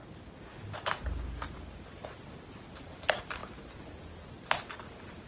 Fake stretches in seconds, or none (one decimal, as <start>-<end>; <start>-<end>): none